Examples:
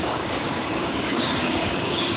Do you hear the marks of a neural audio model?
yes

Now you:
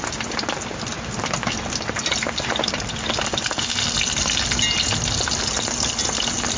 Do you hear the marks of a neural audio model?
no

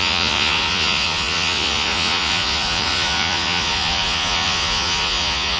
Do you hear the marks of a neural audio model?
yes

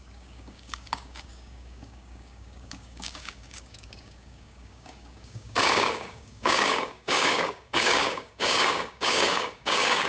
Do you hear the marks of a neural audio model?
yes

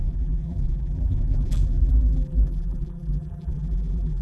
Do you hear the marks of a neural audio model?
yes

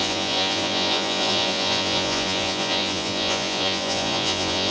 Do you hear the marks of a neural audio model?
yes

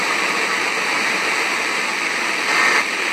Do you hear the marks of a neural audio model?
no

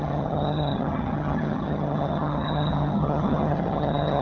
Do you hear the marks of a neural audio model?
yes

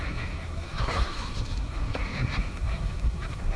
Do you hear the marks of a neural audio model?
yes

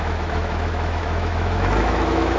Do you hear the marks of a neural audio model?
yes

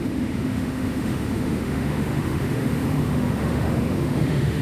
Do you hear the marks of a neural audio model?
yes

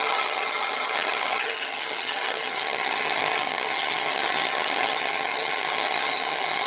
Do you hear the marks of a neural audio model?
yes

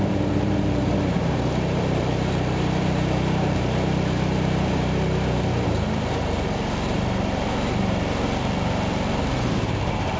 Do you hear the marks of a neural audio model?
yes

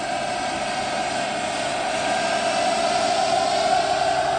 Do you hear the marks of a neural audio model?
no